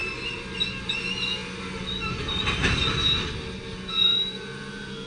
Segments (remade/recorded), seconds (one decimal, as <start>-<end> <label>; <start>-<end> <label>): 0.0-0.9 recorded; 0.9-1.4 remade; 1.4-3.9 recorded; 3.9-5.1 remade